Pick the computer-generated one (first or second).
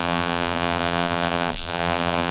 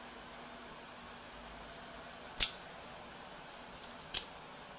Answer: first